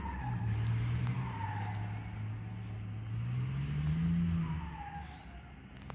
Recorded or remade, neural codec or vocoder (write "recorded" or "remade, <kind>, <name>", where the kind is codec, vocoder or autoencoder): recorded